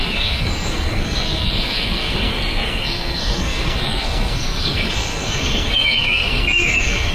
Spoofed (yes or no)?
yes